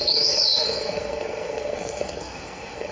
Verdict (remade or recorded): remade